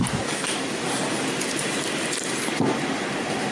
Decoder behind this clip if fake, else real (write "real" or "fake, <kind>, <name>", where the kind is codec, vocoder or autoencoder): real